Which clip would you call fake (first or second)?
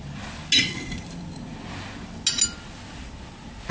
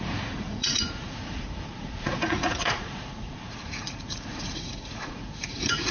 second